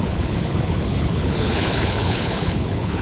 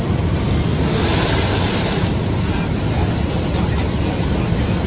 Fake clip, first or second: first